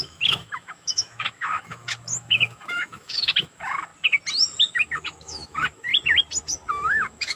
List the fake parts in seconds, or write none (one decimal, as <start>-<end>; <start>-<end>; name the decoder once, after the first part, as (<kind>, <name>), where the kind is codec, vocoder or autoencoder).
0.0-3.9 (autoencoder, DAC-VAE); 4.7-5.9; 6.7-7.4